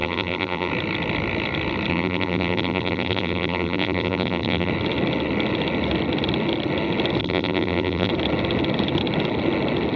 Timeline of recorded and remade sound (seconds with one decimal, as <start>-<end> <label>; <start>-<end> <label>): 0.0-0.7 remade; 0.7-1.9 recorded; 1.9-4.7 remade; 4.7-7.2 recorded; 7.2-8.1 remade; 8.1-10.0 recorded